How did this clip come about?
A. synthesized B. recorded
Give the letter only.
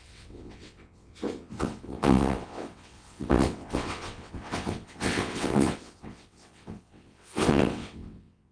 A